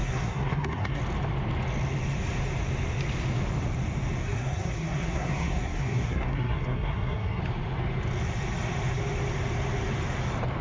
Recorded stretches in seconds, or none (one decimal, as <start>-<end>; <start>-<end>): 1.0-4.2; 7.4-10.6